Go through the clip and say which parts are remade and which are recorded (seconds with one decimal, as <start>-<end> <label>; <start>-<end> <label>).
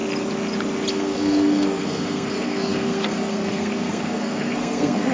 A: 0.0-0.9 recorded; 0.9-5.1 remade